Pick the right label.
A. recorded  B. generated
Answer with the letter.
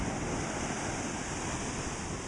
A